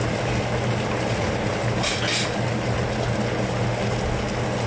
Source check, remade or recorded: recorded